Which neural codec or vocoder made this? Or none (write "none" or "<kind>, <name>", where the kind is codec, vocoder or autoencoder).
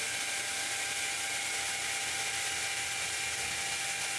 none